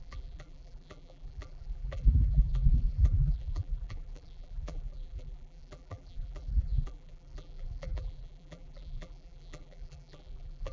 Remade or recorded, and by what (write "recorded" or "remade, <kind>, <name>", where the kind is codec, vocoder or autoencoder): remade, vocoder, BigVGAN v2